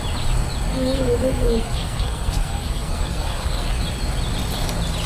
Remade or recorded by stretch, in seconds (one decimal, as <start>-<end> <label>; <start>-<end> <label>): 0.0-0.7 recorded; 0.7-3.8 remade; 3.8-5.1 recorded